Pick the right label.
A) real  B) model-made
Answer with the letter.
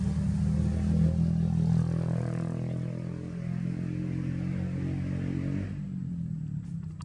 A